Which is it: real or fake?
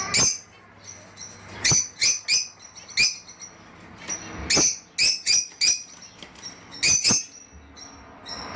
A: real